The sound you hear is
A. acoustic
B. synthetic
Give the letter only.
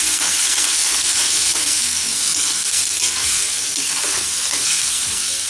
B